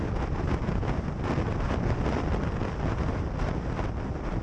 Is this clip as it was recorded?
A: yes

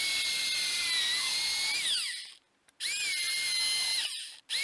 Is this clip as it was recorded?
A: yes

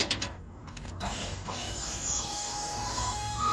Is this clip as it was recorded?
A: no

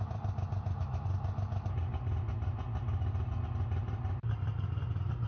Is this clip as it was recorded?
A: no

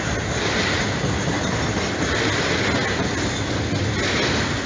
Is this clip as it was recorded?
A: yes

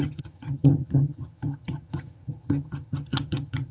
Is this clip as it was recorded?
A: no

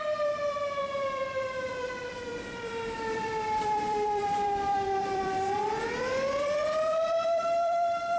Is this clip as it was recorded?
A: no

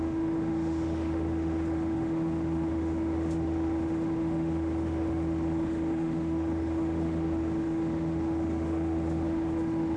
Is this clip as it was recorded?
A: no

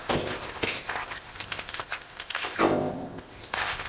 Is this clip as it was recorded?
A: no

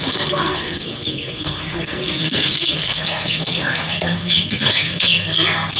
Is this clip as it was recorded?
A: no